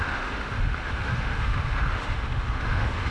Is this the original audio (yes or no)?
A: no